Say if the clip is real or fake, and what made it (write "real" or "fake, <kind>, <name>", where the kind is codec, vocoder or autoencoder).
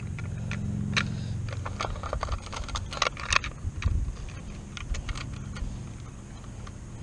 real